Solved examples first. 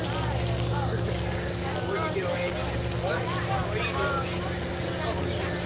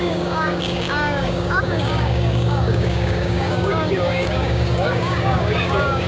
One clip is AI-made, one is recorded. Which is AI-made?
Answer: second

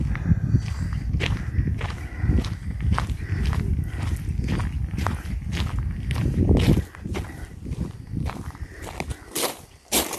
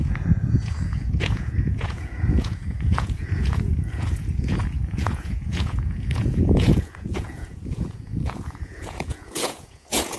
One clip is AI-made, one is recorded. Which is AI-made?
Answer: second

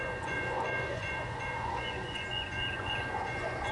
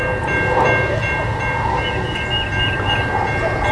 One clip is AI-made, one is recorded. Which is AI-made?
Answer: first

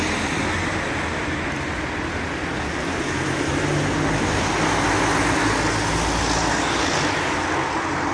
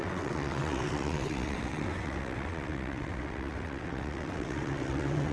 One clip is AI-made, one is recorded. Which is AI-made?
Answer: second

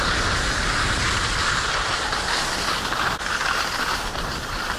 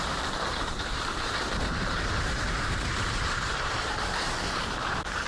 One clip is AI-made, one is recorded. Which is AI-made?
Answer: second